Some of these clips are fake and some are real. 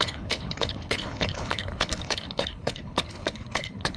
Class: fake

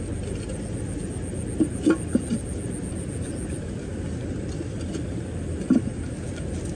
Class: real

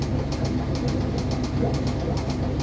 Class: real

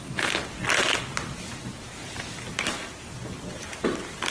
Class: real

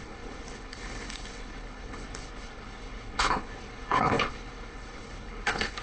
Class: fake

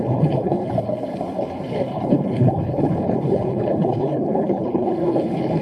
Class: fake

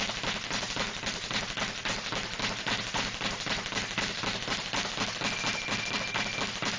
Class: real